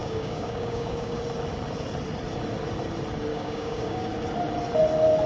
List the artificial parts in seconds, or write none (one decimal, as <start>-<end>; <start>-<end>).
0.0-1.2; 3.3-4.1